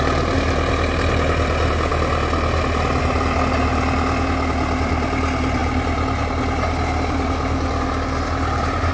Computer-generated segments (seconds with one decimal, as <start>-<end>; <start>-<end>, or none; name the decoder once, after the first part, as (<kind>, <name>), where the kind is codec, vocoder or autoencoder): none